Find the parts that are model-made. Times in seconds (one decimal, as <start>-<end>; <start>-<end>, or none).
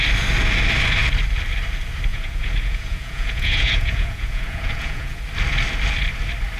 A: 2.1-5.2